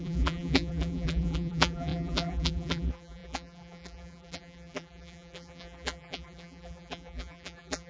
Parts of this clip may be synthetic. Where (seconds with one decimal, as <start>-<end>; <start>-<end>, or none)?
0.0-7.9